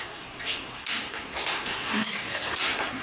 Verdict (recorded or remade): remade